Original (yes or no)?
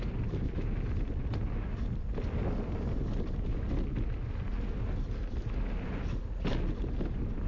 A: yes